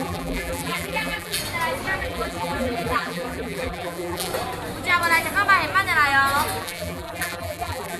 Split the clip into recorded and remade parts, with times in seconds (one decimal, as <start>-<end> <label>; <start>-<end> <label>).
0.0-1.4 remade; 1.4-2.0 recorded; 2.0-4.3 remade; 4.3-6.6 recorded; 6.6-8.0 remade